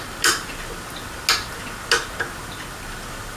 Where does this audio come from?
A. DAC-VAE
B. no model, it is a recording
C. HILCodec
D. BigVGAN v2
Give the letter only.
B